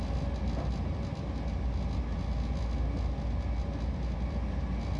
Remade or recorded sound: recorded